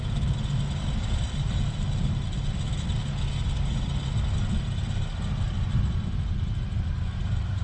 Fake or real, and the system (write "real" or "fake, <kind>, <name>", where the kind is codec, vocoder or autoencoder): real